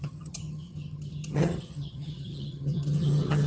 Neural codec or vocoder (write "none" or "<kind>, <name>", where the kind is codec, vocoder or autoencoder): vocoder, HiFi-GAN